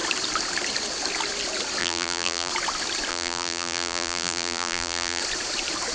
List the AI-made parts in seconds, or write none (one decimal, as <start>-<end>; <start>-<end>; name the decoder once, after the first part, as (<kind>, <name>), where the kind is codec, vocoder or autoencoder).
1.8-2.5 (vocoder, BigVGAN v2); 3.1-5.2